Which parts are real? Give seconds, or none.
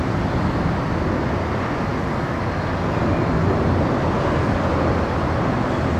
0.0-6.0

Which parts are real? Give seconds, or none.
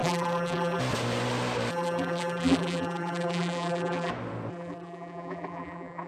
0.8-1.7; 4.1-4.5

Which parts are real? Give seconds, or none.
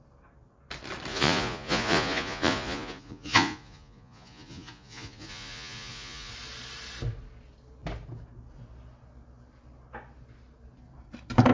0.0-1.1; 6.3-11.5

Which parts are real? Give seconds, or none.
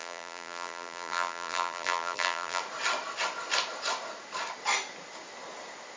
2.6-6.0